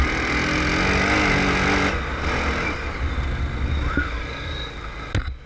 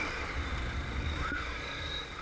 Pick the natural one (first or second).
first